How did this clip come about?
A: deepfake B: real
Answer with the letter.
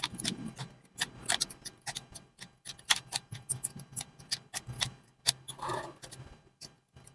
B